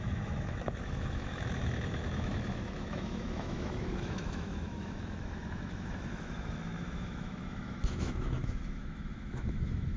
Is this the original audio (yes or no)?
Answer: no